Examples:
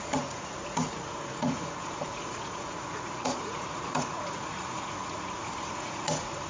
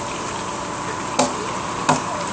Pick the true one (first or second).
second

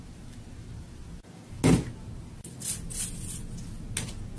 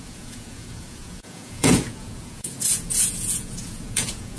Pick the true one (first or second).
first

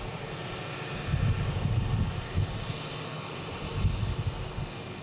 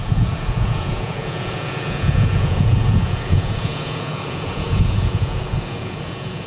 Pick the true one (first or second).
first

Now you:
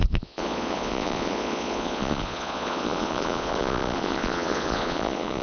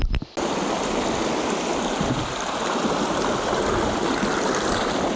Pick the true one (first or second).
second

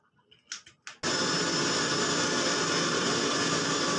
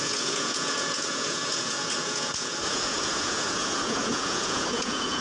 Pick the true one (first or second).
first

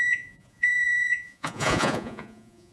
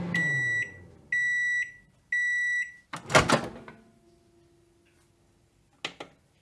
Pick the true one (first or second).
second